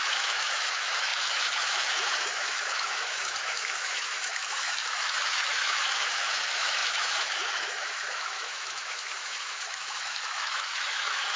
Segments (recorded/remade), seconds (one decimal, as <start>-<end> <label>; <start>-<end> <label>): 0.0-11.4 remade